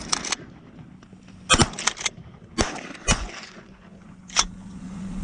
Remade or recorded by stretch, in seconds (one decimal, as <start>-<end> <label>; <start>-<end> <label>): 0.0-3.0 recorded; 3.0-5.2 remade